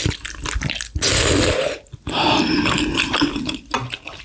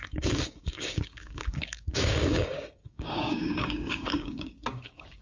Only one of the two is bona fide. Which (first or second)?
first